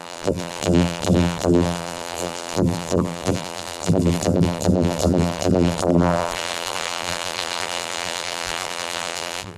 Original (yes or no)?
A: no